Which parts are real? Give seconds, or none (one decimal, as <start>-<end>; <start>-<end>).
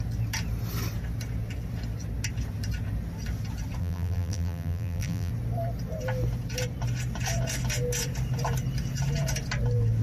0.0-3.8; 5.3-10.0